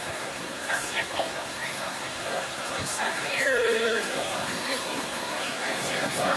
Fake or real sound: fake